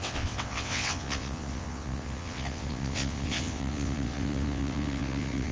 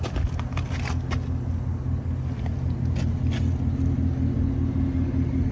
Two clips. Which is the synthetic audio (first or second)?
first